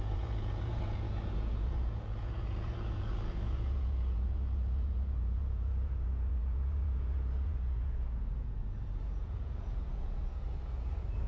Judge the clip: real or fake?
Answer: fake